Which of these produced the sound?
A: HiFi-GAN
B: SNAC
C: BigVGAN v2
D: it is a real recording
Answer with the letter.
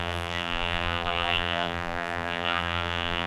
C